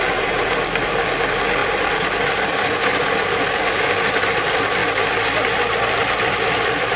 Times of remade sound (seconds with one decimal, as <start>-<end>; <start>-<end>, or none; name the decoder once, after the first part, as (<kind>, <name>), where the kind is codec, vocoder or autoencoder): none